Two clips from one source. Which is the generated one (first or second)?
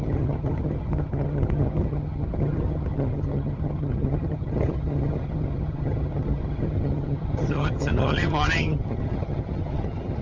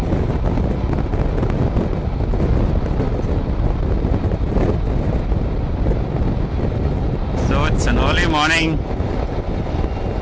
first